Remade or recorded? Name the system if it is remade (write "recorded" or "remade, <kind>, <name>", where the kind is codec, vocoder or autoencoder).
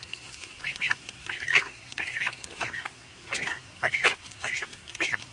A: remade, codec, SNAC